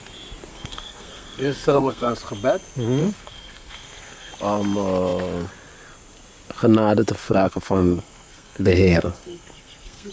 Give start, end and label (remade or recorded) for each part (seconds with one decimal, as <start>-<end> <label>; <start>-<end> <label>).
0.0-0.5 recorded; 0.5-2.1 remade; 2.1-3.0 recorded; 3.0-4.3 remade; 4.3-7.2 recorded; 7.2-10.1 remade